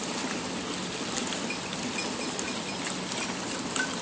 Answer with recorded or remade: recorded